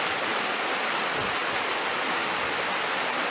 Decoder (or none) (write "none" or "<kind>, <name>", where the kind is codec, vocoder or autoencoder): none